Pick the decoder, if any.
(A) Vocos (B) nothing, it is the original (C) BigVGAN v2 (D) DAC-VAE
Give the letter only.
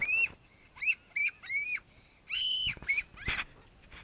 B